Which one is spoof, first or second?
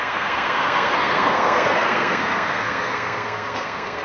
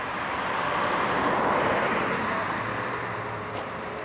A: first